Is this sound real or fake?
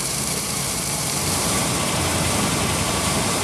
fake